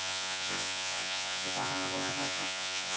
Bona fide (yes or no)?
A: no